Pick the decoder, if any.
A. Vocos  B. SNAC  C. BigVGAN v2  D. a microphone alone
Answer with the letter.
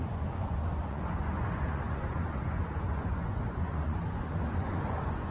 A